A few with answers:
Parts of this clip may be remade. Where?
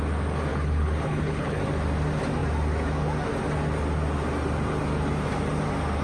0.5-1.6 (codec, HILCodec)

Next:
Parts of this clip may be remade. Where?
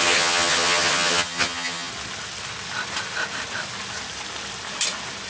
0.0-1.9 (vocoder, HiFi-GAN)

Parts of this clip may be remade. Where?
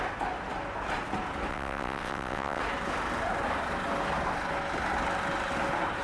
1.5-2.6 (vocoder, WaveNeXt)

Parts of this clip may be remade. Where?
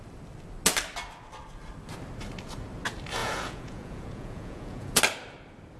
3.2-5.0 (vocoder, Vocos)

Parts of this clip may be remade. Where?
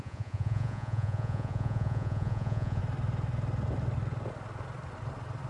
0.0-2.8 (vocoder, Vocos)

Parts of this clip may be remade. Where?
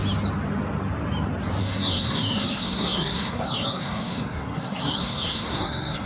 1.6-6.1 (codec, SNAC)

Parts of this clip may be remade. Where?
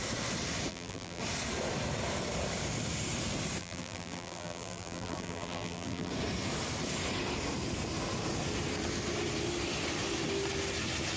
0.7-1.2 (vocoder, BigVGAN v2); 3.6-6.1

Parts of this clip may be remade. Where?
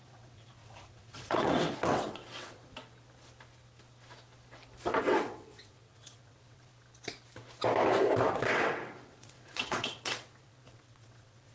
0.0-2.7 (vocoder, WaveNeXt); 5.0-6.7; 8.3-11.5